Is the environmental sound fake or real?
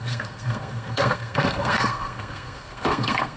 fake